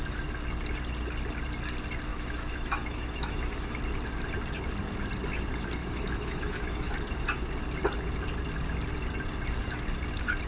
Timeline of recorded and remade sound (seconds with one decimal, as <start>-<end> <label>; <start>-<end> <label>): 0.0-2.1 recorded; 2.1-3.8 remade; 3.8-5.8 recorded; 5.8-6.9 remade; 6.9-10.5 recorded